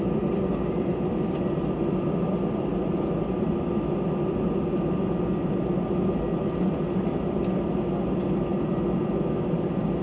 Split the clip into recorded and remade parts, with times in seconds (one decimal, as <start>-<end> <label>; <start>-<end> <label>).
0.0-10.0 recorded